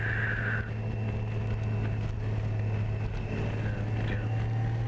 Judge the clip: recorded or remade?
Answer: recorded